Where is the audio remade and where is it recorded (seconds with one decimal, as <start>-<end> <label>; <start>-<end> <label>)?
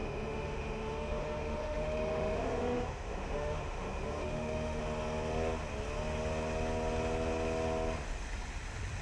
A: 0.0-4.8 remade; 4.8-9.0 recorded